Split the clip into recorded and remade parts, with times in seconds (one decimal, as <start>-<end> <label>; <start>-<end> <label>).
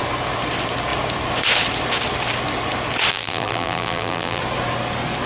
0.0-3.1 recorded; 3.1-4.4 remade; 4.4-5.3 recorded